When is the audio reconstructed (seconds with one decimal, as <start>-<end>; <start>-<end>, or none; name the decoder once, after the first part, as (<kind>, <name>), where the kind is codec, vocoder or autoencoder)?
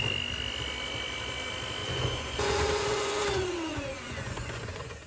1.8-5.1 (vocoder, Vocos)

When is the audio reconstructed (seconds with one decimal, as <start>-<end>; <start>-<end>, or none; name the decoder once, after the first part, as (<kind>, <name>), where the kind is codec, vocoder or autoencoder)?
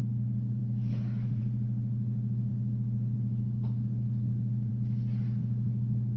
none